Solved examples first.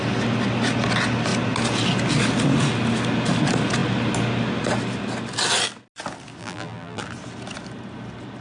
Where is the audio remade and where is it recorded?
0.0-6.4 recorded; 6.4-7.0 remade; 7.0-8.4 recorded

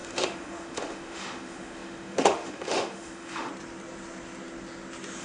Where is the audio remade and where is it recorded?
0.0-3.5 remade; 3.5-5.2 recorded

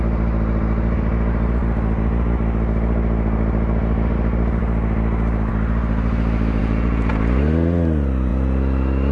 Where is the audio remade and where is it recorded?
0.0-6.6 recorded; 6.6-7.1 remade; 7.1-9.1 recorded

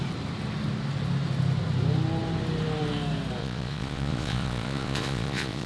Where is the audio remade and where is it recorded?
0.0-3.4 recorded; 3.4-5.7 remade

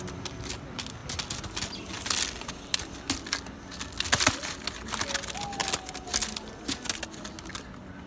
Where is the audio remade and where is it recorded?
0.0-8.1 recorded

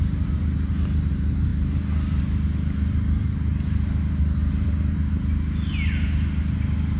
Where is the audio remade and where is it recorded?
0.0-7.0 recorded

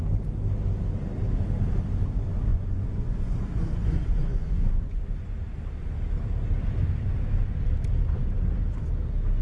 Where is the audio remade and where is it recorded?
0.0-2.5 recorded; 2.5-5.0 remade; 5.0-9.4 recorded